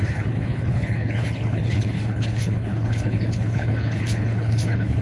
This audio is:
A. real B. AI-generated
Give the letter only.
B